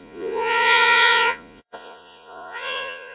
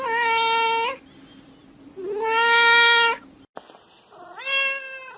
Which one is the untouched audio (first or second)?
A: second